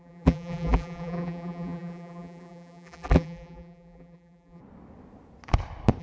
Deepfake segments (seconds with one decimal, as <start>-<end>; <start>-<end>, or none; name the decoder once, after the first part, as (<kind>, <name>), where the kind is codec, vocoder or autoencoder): 0.0-4.6 (vocoder, BigVGAN v2)